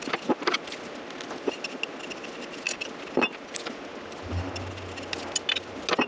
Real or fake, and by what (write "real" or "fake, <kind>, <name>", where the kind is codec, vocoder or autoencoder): real